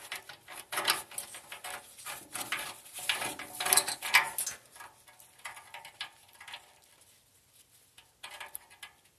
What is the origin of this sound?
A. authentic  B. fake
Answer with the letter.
A